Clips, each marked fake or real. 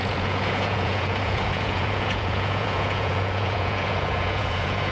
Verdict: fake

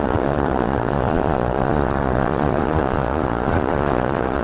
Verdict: fake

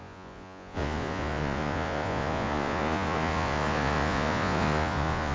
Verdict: fake